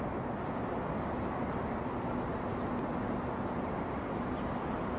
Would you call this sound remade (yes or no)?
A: no